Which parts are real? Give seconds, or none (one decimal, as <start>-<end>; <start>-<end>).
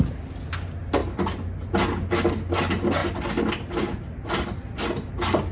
0.0-5.5